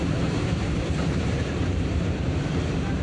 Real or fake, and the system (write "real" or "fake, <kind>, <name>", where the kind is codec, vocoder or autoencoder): fake, vocoder, BigVGAN v2